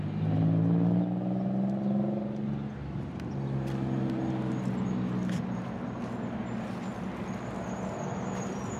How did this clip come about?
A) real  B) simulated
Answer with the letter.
A